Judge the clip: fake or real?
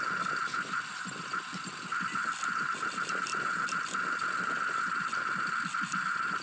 real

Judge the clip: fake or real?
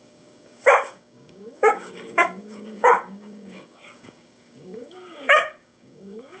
fake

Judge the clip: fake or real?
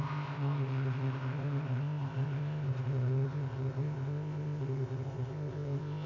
fake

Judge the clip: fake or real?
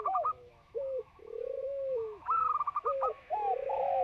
fake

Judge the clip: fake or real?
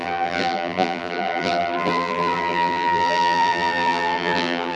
fake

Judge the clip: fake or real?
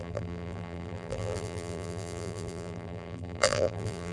fake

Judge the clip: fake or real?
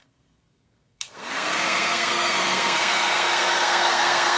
fake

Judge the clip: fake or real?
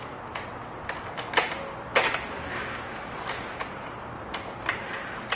real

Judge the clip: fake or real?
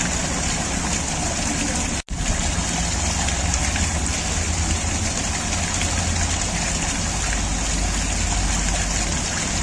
real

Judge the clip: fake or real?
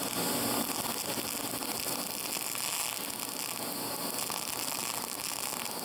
real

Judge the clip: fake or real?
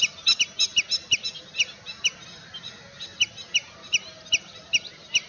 real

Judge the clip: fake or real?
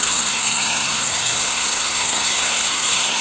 fake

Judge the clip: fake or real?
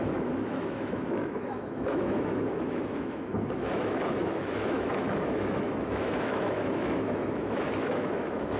fake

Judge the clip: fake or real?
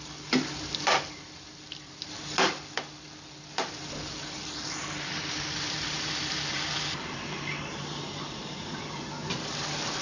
fake